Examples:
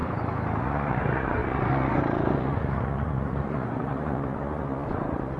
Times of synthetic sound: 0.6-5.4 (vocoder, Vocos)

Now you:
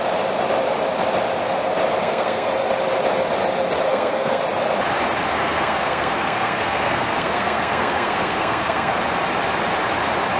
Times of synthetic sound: 2.0-2.5 (codec, SNAC); 3.9-4.4; 5.3-9.0

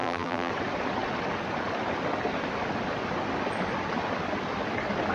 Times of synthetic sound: 0.0-0.5 (vocoder, BigVGAN v2)

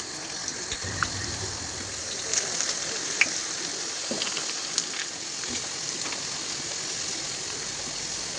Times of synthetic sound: none

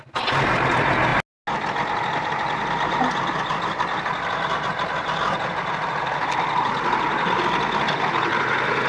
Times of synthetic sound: none

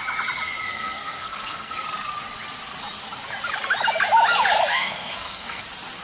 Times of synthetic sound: 0.7-1.7 (codec, SNAC); 4.7-5.6

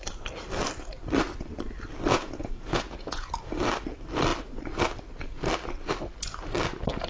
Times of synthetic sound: 2.1-3.3 (vocoder, Vocos)

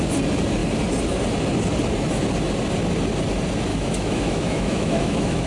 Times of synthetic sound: 3.7-5.5 (autoencoder, DAC-VAE)